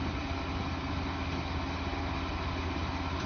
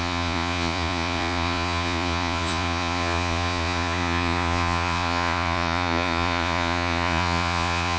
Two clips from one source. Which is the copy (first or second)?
second